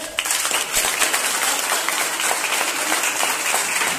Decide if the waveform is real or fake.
real